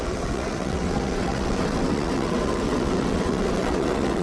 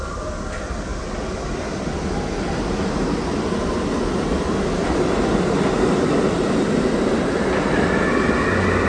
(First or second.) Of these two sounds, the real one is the second